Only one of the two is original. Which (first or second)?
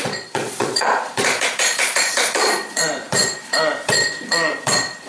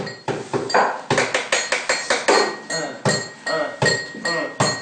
second